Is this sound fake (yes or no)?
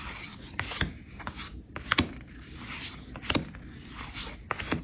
no